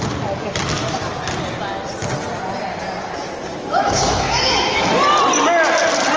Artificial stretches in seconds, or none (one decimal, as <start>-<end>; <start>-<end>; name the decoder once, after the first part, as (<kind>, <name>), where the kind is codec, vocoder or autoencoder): 3.5-4.9 (autoencoder, DAC-VAE)